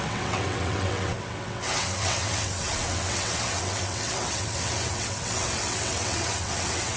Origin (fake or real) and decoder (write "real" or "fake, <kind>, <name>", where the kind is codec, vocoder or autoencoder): fake, vocoder, WaveNeXt